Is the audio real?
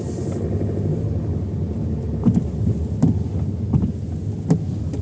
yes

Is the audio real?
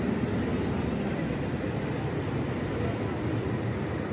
yes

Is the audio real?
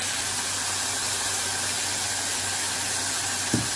yes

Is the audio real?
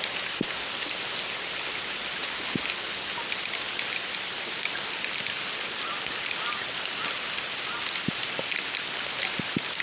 yes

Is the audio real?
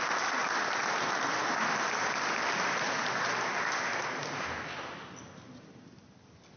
yes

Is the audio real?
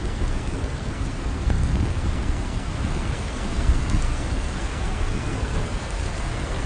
no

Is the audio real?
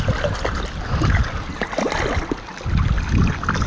yes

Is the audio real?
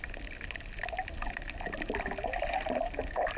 yes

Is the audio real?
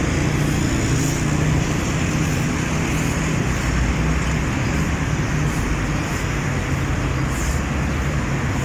yes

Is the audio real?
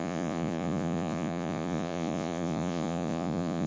no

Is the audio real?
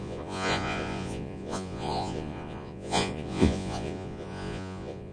no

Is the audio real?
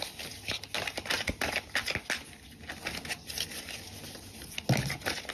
yes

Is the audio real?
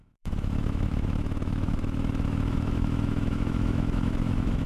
no